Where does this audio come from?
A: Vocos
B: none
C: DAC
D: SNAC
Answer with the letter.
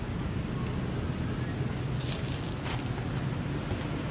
B